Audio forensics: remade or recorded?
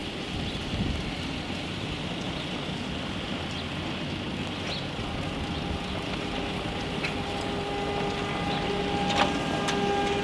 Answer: recorded